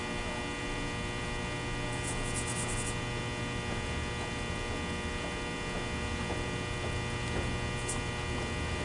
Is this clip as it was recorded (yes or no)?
yes